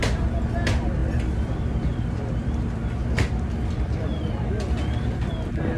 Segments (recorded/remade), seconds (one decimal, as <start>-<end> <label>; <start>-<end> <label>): 0.0-1.0 recorded; 1.0-4.5 remade; 4.5-5.8 recorded